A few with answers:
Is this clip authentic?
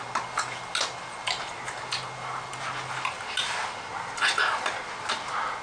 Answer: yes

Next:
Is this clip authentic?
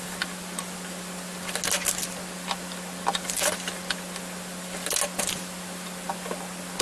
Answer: yes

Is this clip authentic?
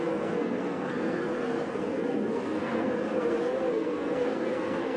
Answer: no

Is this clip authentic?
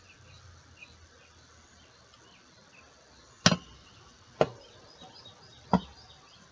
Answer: yes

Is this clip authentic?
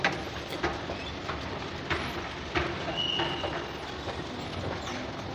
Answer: yes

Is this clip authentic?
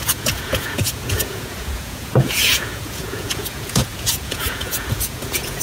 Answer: no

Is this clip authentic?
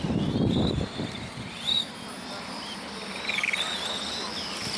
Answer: yes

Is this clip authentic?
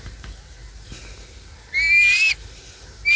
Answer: yes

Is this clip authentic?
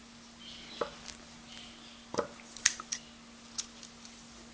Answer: yes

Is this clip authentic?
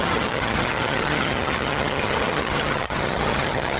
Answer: no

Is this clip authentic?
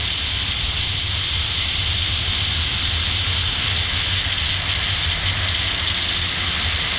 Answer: yes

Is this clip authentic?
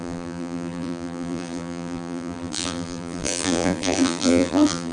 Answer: no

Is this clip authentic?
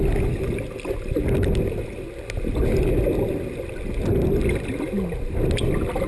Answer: yes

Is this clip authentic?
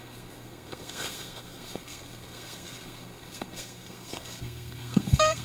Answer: no